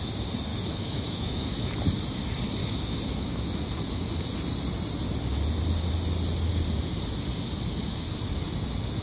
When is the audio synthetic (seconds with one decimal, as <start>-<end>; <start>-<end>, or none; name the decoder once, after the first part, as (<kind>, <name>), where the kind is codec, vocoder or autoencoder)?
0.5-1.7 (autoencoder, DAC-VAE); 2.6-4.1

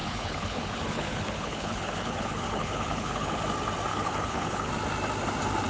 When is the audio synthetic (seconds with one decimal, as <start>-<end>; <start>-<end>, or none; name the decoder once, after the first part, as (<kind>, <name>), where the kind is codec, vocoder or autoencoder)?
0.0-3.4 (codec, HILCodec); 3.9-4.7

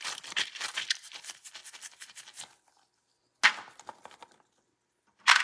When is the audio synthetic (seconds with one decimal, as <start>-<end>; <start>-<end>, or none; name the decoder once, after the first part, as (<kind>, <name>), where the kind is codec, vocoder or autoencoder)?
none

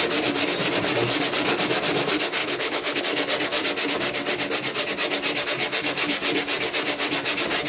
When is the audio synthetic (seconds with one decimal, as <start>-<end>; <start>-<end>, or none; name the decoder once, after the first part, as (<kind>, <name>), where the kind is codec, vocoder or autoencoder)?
2.4-3.0 (codec, HILCodec)

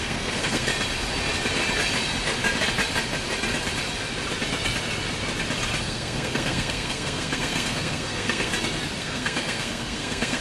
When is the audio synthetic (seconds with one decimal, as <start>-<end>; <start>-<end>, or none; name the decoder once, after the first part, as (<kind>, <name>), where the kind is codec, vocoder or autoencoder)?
0.0-0.7 (codec, SNAC); 5.8-8.5; 9.0-10.4

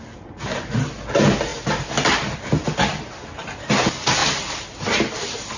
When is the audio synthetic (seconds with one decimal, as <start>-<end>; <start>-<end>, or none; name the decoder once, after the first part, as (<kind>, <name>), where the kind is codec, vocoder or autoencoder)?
1.5-3.1 (vocoder, BigVGAN v2); 4.2-5.6

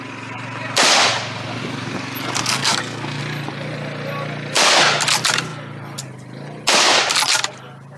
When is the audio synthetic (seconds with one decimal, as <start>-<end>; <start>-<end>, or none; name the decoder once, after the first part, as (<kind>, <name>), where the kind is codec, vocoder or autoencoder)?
2.4-3.2 (codec, SNAC)

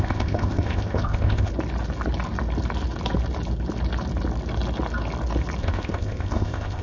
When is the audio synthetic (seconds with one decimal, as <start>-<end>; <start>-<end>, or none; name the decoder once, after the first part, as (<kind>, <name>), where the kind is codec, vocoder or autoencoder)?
0.0-1.5 (codec, ZipCodec); 5.6-6.8